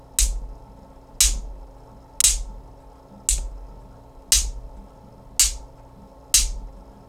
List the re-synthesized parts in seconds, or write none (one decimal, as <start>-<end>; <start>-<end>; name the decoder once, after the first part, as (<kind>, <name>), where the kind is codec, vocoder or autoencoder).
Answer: none